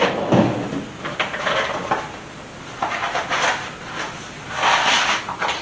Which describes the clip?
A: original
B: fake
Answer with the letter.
A